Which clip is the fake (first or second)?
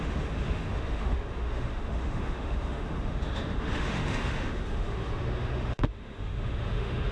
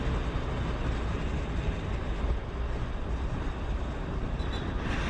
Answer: first